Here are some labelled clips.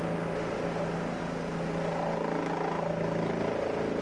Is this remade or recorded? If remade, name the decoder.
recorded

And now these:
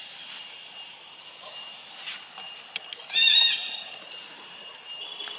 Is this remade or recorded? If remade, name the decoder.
recorded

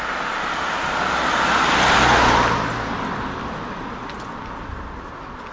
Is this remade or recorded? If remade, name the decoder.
recorded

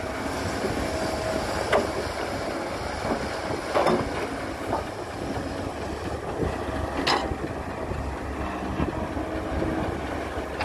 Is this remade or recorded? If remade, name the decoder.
recorded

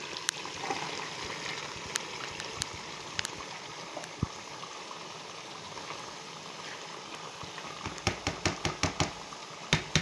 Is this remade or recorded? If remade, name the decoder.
recorded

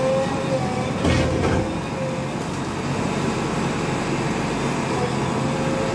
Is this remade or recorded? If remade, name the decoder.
recorded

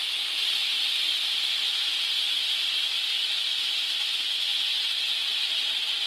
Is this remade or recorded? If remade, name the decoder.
recorded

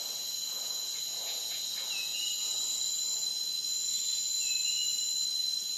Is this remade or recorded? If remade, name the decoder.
remade, vocoder, Vocos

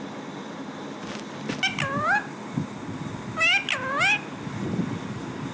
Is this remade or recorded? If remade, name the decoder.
recorded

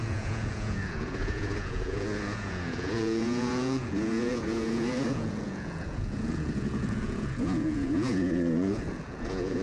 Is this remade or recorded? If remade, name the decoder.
remade, vocoder, Vocos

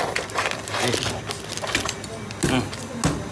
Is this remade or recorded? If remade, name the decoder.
recorded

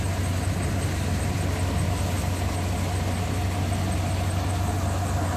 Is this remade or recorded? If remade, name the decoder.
recorded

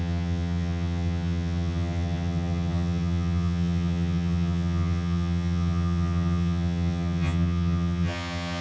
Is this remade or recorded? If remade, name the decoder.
remade, vocoder, HiFi-GAN